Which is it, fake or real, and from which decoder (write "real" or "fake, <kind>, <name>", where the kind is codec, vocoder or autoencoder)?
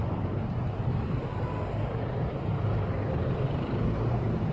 real